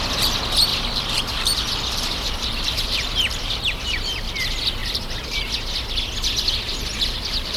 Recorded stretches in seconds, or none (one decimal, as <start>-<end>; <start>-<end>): 0.0-0.7; 4.3-4.8; 5.5-6.7